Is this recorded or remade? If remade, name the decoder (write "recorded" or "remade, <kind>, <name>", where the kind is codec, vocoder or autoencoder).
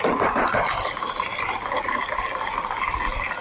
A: recorded